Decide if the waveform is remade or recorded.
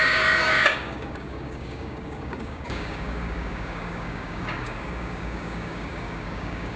remade